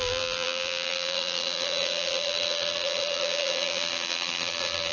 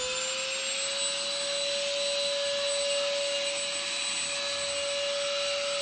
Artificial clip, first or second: first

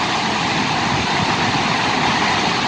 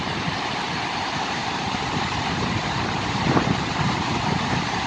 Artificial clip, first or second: second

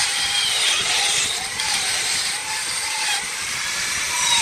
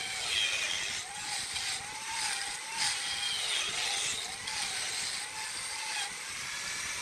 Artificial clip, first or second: first